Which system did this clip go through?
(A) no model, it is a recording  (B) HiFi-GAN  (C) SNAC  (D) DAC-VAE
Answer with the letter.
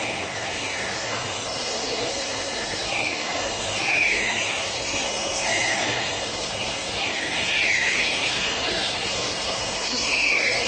C